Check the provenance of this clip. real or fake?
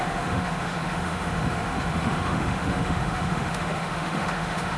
fake